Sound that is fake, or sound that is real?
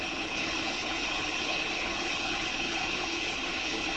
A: fake